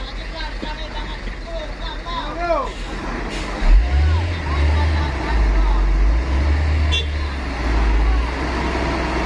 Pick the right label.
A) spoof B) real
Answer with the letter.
B